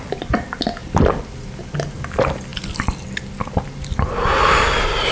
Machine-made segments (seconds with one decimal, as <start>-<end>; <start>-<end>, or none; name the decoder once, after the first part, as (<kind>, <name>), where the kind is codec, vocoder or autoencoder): none